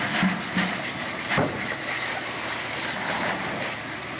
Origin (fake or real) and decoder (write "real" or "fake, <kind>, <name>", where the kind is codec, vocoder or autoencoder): real